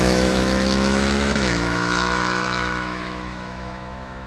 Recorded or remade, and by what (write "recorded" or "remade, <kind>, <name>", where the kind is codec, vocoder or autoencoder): remade, autoencoder, DAC-VAE